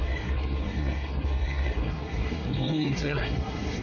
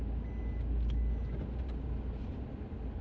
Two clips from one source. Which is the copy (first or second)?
first